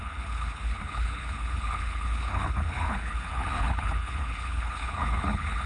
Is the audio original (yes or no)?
no